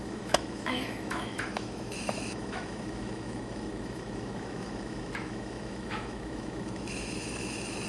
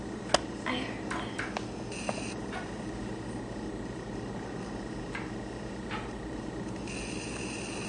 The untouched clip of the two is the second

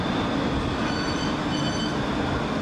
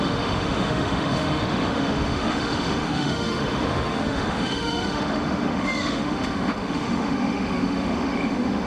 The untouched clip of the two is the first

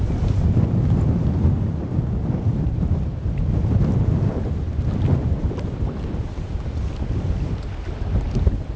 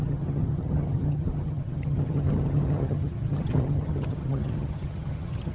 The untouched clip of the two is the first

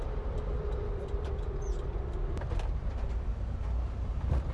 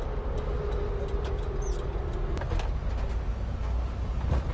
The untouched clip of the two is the second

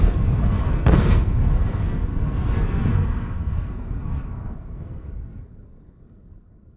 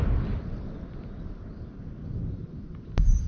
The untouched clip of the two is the second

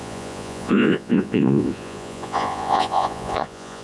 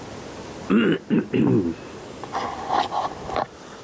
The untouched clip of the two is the second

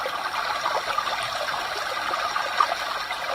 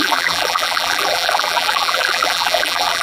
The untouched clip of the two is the first